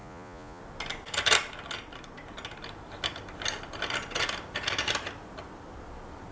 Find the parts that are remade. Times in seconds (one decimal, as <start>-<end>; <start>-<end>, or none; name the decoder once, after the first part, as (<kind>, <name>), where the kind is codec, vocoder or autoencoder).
0.0-0.6 (vocoder, Vocos)

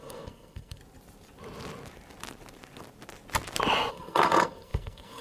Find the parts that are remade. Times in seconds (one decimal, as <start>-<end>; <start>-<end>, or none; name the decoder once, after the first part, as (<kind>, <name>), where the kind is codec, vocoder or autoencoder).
0.0-0.8 (codec, SNAC); 3.9-5.2